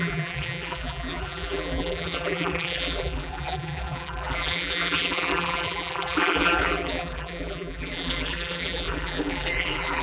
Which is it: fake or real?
fake